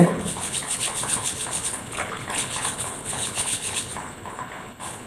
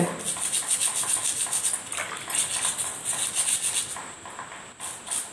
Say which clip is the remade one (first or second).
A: first